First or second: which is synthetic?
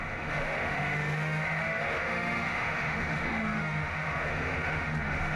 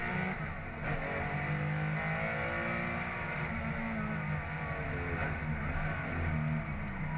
first